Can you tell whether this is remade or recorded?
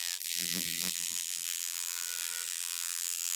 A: remade